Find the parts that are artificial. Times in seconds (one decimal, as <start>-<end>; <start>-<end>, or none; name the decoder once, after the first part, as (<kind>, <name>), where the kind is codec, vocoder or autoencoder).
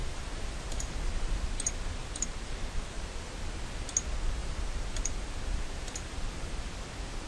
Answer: 0.0-1.5 (vocoder, BigVGAN v2); 2.0-3.0; 4.4-6.6